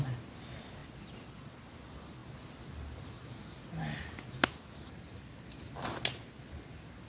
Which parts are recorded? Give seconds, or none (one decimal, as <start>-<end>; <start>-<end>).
0.0-7.1